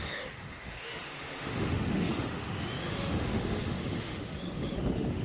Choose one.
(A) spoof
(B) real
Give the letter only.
A